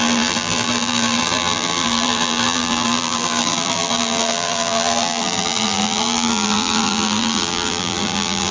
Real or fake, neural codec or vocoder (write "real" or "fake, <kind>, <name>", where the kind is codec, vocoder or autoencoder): fake, vocoder, BigVGAN v2